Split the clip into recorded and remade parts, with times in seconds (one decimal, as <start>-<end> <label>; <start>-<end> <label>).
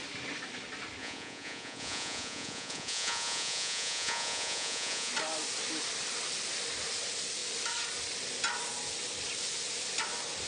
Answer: 0.0-1.0 recorded; 1.0-5.1 remade; 5.1-10.5 recorded